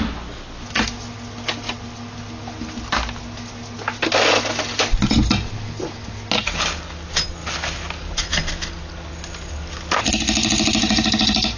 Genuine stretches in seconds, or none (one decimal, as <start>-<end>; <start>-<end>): 0.0-11.6